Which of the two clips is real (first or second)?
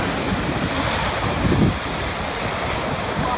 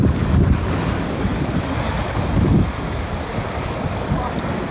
first